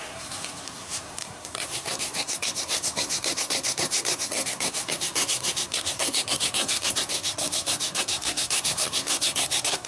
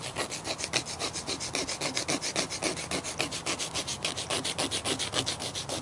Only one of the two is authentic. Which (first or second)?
second